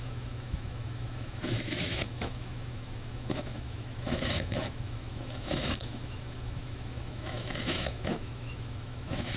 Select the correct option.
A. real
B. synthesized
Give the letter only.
B